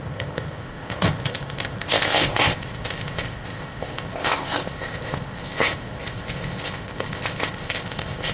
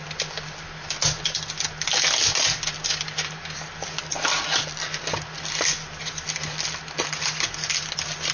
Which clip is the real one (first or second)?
second